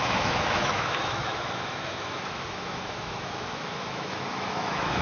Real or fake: fake